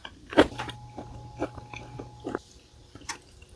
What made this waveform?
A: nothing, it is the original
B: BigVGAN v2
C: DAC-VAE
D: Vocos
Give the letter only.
B